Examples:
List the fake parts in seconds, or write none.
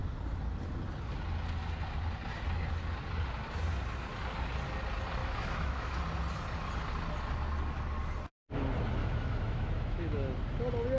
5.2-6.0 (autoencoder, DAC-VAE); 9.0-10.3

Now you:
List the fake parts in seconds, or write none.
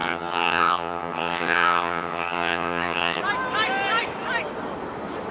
0.0-3.2 (vocoder, HiFi-GAN)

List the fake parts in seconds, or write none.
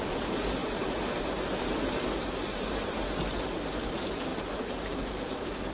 none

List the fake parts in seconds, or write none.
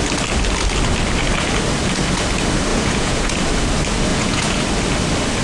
2.7-3.3 (vocoder, Vocos); 4.1-4.6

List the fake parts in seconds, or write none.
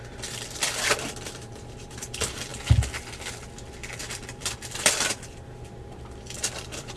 0.0-2.5 (vocoder, BigVGAN v2); 4.0-7.0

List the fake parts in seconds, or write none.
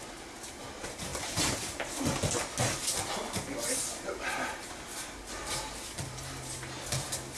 none